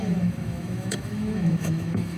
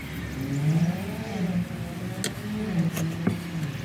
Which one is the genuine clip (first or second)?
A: second